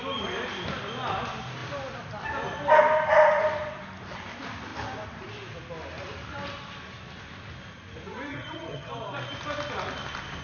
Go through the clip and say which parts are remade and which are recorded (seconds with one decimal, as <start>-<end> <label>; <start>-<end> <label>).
0.0-8.3 recorded; 8.3-8.9 remade; 8.9-10.4 recorded